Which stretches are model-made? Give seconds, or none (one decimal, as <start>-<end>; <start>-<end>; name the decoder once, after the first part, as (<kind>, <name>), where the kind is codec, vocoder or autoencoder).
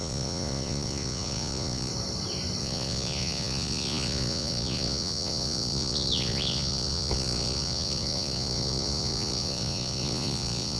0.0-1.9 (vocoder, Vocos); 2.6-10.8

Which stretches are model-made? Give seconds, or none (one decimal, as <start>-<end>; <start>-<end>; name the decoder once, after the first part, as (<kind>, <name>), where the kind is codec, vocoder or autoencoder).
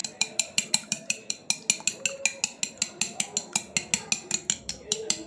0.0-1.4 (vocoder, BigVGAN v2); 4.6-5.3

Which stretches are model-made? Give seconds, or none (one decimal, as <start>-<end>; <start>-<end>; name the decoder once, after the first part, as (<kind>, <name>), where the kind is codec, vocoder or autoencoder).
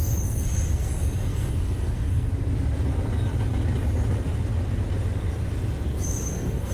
0.0-2.3 (codec, SNAC); 6.3-6.7